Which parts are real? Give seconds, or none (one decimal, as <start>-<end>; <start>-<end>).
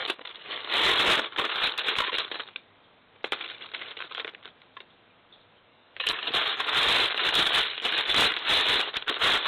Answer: 0.7-5.7; 6.2-9.5